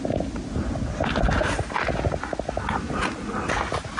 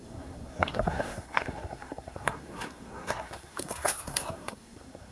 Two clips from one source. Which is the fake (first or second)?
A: second